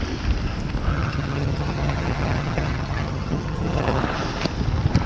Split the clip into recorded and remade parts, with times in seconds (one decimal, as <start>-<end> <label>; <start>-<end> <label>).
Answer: 0.0-0.9 recorded; 0.9-4.0 remade; 4.0-5.1 recorded